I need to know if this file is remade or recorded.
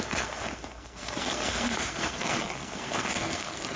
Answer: remade